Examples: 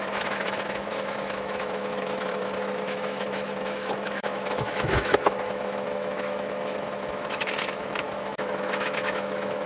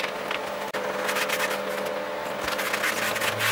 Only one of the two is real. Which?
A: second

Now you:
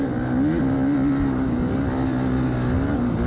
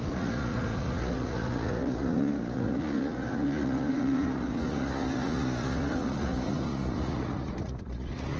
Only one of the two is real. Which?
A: first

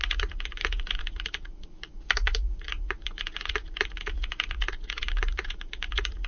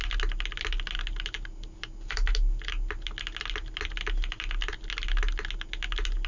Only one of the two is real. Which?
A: second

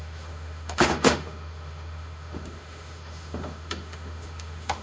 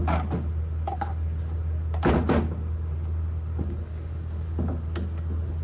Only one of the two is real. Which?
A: second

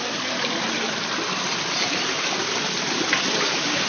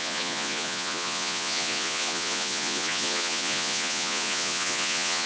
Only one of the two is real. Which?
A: first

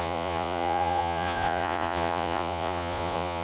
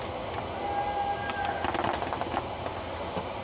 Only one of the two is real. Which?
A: second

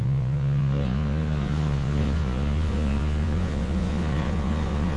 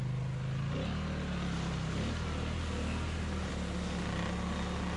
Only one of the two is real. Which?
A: second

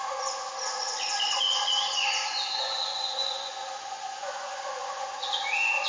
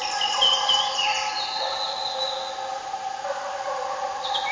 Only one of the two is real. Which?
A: second